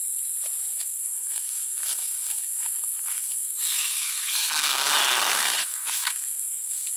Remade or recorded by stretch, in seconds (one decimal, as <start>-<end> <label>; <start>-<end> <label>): 0.0-0.7 recorded; 0.7-4.9 remade; 4.9-5.6 recorded; 5.6-7.0 remade